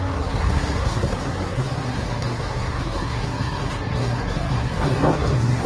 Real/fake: fake